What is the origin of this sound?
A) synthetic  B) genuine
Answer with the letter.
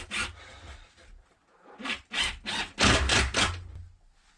B